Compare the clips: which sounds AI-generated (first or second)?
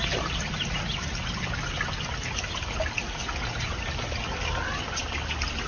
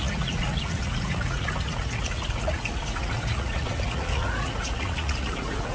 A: second